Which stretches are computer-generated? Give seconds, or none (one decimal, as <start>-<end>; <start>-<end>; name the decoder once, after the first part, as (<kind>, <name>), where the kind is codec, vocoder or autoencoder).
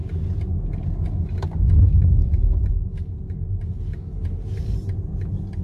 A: none